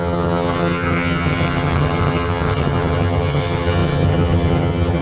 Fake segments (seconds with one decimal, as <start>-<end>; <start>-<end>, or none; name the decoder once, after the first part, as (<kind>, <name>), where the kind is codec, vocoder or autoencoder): 0.0-5.0 (vocoder, HiFi-GAN)